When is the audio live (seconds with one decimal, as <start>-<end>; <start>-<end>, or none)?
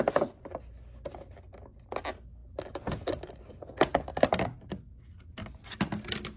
0.0-6.4